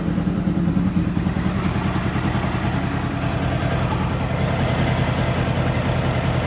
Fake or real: real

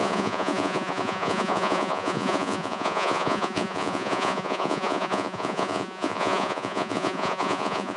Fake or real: fake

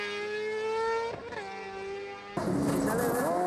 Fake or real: real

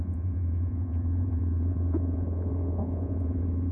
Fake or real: fake